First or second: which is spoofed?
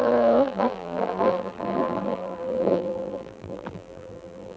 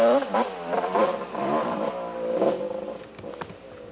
first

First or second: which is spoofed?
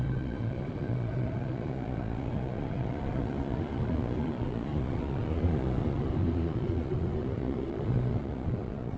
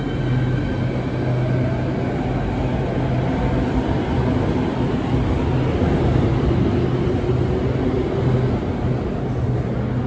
first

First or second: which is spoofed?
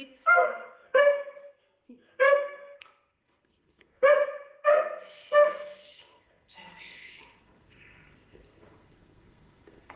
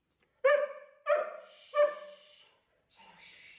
first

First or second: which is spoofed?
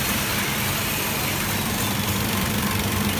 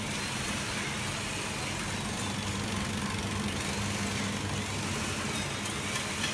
first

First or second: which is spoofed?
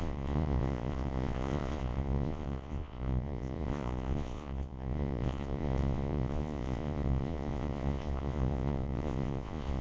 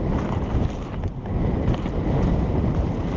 first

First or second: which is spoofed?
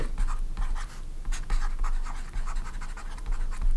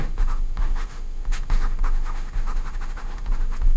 second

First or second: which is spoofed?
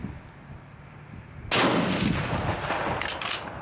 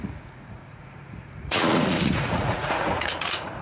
second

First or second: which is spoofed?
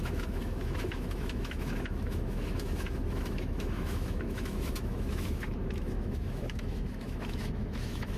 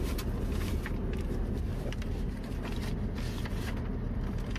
first